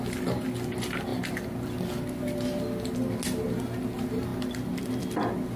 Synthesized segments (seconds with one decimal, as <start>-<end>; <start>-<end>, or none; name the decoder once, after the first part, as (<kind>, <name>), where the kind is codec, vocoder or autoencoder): none